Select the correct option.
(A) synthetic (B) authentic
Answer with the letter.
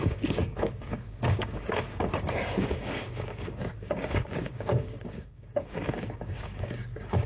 A